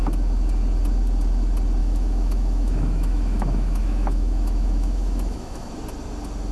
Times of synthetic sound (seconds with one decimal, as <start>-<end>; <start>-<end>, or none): 1.8-5.7